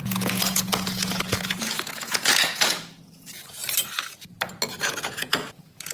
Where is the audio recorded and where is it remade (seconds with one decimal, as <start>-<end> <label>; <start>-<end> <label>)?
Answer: 0.0-3.6 remade; 3.6-4.7 recorded; 4.7-5.9 remade